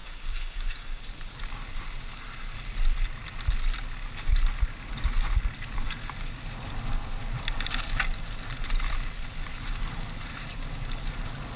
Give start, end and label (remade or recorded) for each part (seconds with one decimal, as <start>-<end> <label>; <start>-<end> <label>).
0.0-1.0 remade; 1.0-11.6 recorded